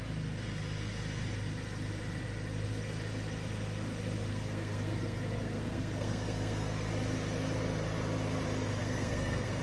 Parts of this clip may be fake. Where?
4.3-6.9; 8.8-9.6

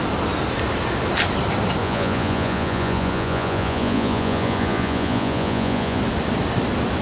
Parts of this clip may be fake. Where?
1.8-6.0

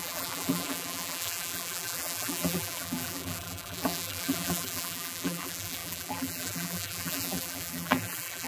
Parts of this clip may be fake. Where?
0.0-8.5

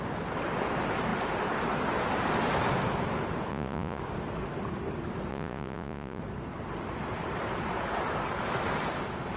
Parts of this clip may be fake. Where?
3.5-4.0; 5.3-6.2

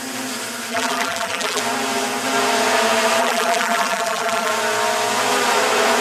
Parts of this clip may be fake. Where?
0.7-1.6; 3.2-4.5

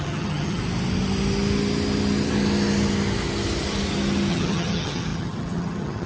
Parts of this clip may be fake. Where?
0.0-0.6; 4.3-6.1

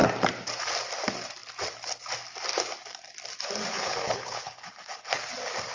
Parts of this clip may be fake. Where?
3.7-5.3

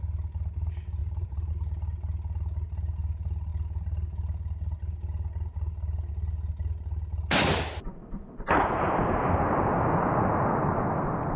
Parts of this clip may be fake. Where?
1.0-1.5